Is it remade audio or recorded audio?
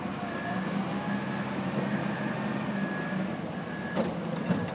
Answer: recorded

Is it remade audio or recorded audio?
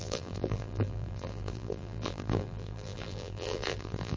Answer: remade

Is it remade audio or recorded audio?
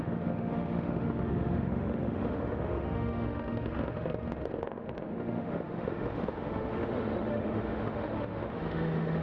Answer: remade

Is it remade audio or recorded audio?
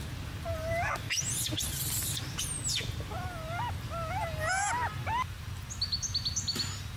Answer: recorded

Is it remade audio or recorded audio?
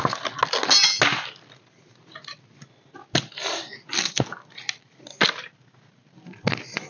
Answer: recorded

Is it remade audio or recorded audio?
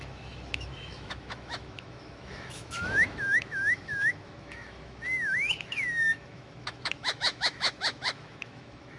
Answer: remade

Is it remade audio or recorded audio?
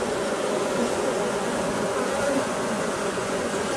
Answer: remade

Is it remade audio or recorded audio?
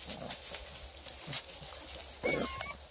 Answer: recorded